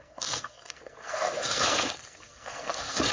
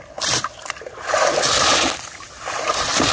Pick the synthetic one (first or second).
first